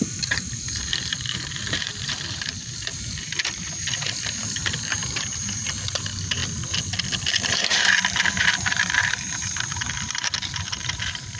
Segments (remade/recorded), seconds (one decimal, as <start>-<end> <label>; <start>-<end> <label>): 0.0-6.4 remade; 6.4-7.3 recorded; 7.3-11.4 remade